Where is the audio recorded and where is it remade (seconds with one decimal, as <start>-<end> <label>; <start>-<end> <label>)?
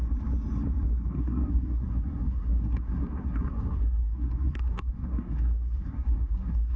0.0-1.1 recorded; 1.1-6.8 remade